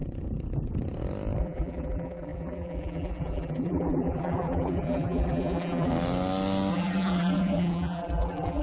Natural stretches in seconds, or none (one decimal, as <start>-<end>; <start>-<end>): 0.0-1.4; 5.9-6.7